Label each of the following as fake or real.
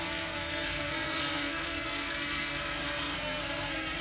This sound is fake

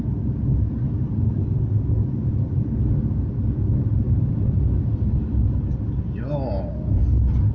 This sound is real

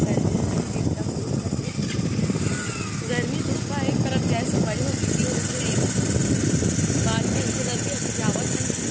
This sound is real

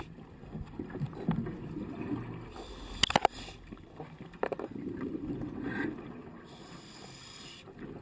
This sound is real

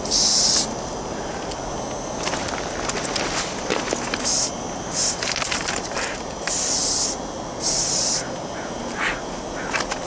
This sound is real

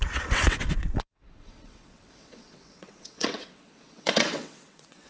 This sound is fake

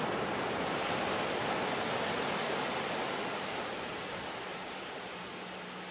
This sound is real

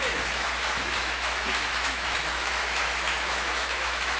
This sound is fake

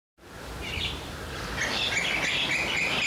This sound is real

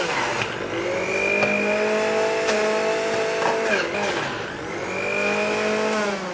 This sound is real